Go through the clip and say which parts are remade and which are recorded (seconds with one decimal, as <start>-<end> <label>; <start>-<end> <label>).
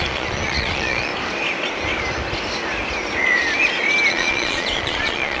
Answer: 0.0-1.1 remade; 1.1-4.1 recorded; 4.1-5.4 remade